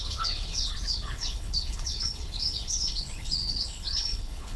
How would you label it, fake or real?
fake